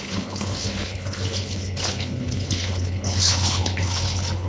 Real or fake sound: fake